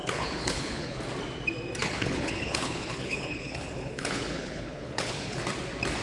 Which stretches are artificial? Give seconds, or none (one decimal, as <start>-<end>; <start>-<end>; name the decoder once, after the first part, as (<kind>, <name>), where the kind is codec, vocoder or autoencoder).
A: 0.0-1.0 (codec, HILCodec); 1.8-5.4